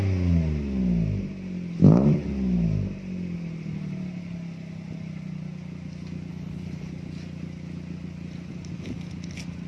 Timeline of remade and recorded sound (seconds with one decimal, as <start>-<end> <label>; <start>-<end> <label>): 0.0-6.3 recorded; 6.3-6.9 remade; 6.9-9.7 recorded